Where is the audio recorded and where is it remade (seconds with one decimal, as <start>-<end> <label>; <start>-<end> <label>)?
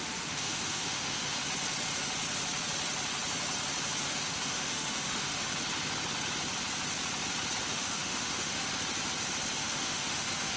0.0-1.4 remade; 1.4-4.0 recorded; 4.0-5.5 remade; 5.5-7.7 recorded; 7.7-8.7 remade; 8.7-9.6 recorded; 9.6-10.6 remade